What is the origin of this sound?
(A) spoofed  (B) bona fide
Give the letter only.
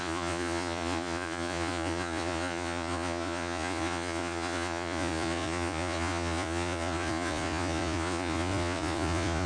A